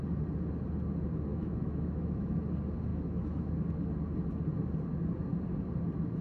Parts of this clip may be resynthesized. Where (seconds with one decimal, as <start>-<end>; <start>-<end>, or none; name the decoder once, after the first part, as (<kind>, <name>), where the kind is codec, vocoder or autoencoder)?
1.3-2.4 (autoencoder, DAC-VAE); 2.9-3.5